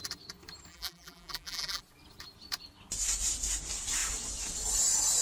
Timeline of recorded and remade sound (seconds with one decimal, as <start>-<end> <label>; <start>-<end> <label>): 0.0-0.7 recorded; 0.7-1.8 remade; 1.8-5.2 recorded